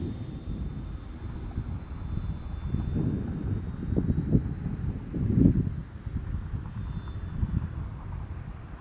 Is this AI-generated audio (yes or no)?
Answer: no